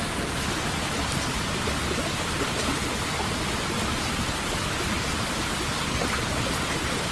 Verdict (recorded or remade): recorded